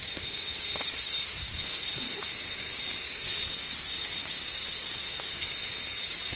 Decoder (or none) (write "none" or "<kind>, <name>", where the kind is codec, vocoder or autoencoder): codec, DAC